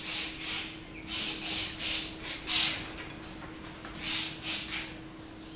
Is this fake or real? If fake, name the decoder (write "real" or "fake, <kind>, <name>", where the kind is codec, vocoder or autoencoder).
real